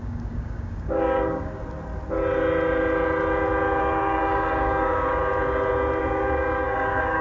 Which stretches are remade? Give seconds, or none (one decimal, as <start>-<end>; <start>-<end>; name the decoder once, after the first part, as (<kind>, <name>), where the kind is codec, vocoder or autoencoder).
0.0-1.6 (codec, DAC); 3.8-5.2; 6.0-7.2